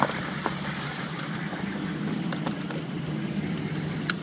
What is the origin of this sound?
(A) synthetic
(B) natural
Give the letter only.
B